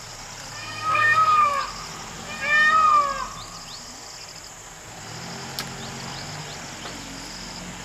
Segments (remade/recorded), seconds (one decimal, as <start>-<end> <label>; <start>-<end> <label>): 0.0-0.6 recorded; 0.6-1.6 remade; 1.6-7.8 recorded